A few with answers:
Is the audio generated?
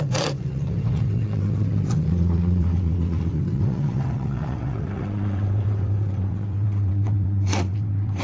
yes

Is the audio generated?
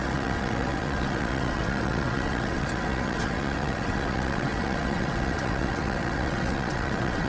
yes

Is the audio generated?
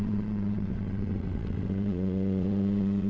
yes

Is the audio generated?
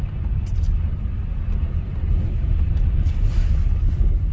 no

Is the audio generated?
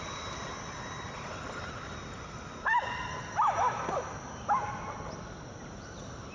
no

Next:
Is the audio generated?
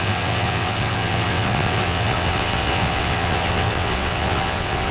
yes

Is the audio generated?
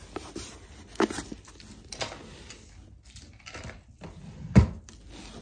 no